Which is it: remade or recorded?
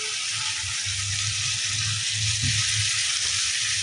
recorded